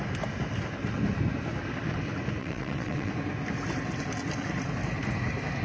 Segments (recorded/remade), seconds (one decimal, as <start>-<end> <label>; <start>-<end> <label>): 0.0-2.4 recorded; 2.4-3.1 remade; 3.1-5.6 recorded

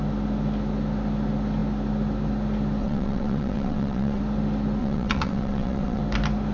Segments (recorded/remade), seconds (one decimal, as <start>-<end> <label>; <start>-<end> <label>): 0.0-2.8 recorded; 2.8-4.2 remade; 4.2-4.8 recorded; 4.8-6.0 remade; 6.0-6.5 recorded